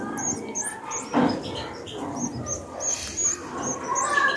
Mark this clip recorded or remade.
recorded